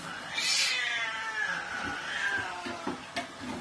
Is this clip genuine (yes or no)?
yes